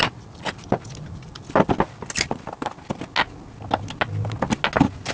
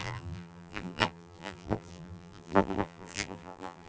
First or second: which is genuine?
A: first